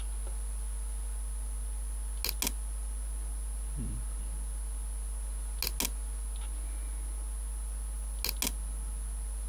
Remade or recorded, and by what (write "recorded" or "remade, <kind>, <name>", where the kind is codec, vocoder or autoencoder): recorded